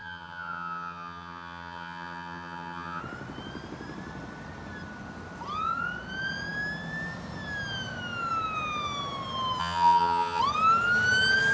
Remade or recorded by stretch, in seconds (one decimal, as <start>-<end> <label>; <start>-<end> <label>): 0.0-3.0 remade; 3.0-9.6 recorded; 9.6-10.4 remade; 10.4-11.5 recorded